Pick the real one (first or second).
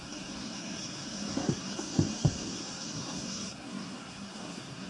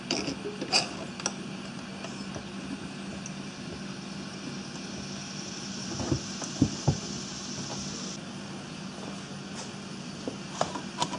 second